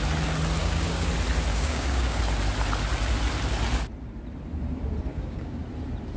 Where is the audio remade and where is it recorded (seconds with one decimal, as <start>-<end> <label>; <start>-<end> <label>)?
0.0-0.6 recorded; 0.6-1.1 remade; 1.1-1.5 recorded; 1.5-2.2 remade; 2.2-5.1 recorded; 5.1-5.6 remade; 5.6-6.2 recorded

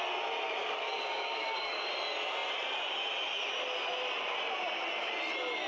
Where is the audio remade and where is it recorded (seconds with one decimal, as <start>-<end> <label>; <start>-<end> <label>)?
0.0-0.6 recorded; 0.6-1.9 remade; 1.9-5.7 recorded

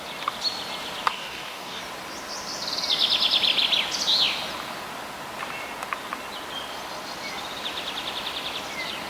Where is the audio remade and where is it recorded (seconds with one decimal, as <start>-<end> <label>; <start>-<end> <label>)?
0.0-1.1 recorded; 1.1-1.8 remade; 1.8-9.1 recorded

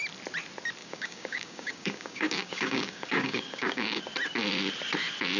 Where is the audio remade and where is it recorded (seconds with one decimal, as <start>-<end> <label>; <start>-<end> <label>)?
0.0-0.8 recorded; 0.8-4.0 remade; 4.0-5.4 recorded

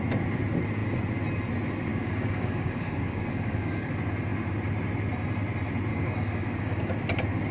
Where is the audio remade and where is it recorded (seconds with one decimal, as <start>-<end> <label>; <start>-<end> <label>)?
0.0-1.9 recorded; 1.9-3.9 remade; 3.9-5.9 recorded; 5.9-6.9 remade; 6.9-7.5 recorded

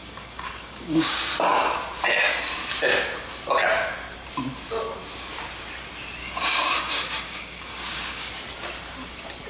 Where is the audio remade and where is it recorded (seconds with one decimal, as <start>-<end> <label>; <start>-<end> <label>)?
0.0-1.2 remade; 1.2-6.2 recorded; 6.2-8.3 remade; 8.3-9.5 recorded